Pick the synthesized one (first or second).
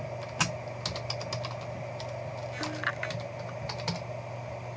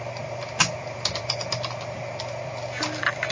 second